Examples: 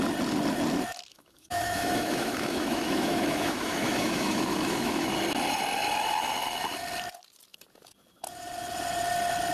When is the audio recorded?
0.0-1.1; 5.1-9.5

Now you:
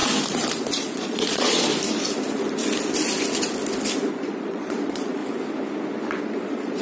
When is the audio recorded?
0.0-0.7; 1.7-4.1; 5.2-6.2

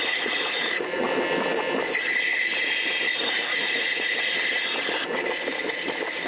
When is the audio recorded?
1.0-3.2; 4.2-6.3